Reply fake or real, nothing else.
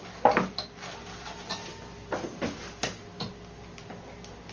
real